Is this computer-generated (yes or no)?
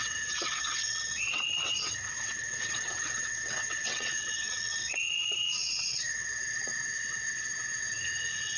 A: yes